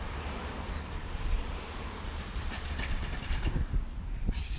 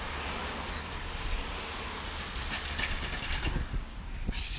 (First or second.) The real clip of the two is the second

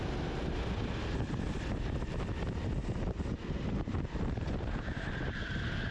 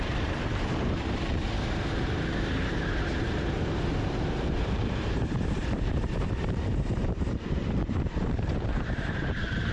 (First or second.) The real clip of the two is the first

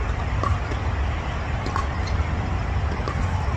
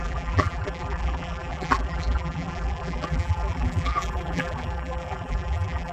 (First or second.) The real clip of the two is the first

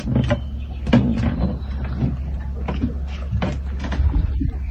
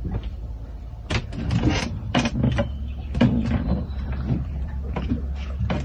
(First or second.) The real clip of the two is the first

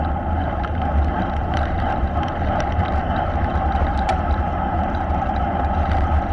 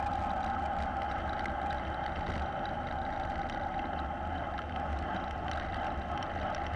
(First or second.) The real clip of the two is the second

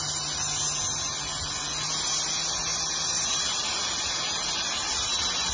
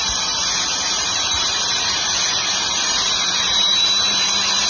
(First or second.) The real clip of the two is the first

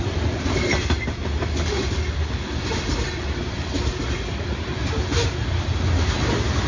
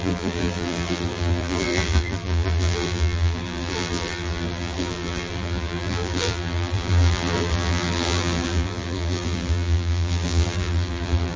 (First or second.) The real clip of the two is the first